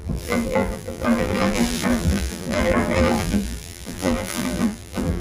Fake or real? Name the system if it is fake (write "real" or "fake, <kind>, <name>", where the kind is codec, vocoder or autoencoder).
fake, vocoder, BigVGAN v2